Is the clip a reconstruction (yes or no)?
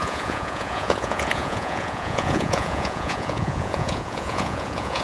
yes